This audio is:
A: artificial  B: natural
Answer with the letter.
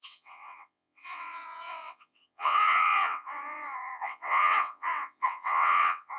A